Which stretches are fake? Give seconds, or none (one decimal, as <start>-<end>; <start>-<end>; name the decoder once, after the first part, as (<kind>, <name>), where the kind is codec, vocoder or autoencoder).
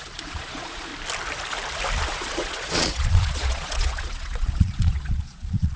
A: 0.0-0.9 (vocoder, Vocos); 2.1-5.8